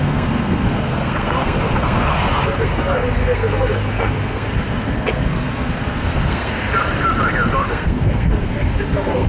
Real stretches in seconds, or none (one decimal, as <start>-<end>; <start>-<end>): 6.7-7.6